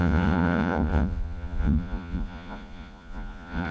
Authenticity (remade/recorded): remade